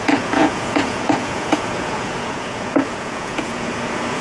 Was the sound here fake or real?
fake